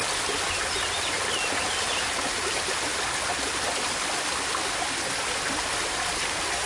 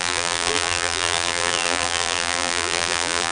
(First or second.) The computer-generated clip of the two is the second